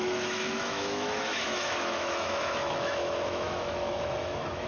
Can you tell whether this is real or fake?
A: fake